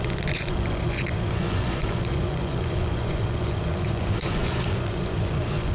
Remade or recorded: remade